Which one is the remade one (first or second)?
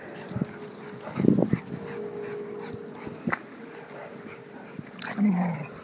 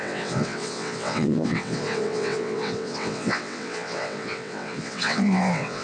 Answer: second